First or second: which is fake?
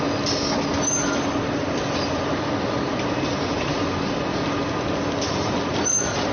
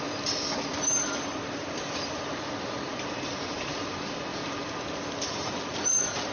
second